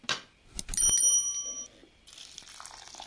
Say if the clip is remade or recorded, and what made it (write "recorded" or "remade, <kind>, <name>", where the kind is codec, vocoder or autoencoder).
recorded